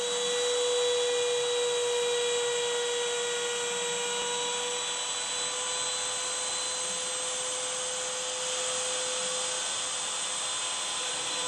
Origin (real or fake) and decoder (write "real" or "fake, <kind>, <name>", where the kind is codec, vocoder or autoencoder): real